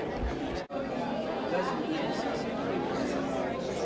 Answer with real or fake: real